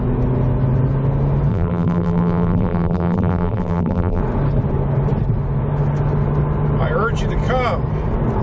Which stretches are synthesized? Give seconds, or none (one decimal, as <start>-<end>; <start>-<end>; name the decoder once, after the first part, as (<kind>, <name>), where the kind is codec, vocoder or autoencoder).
1.5-4.2 (vocoder, BigVGAN v2)